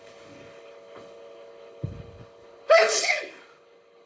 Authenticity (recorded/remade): remade